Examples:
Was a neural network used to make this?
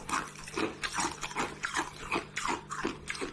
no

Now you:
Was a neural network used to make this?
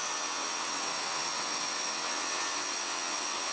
yes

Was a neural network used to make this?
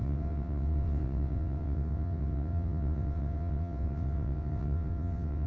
yes